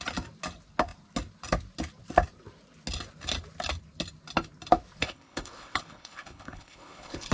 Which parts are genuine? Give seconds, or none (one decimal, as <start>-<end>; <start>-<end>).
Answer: 0.0-5.0